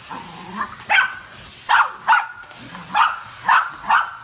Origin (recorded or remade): recorded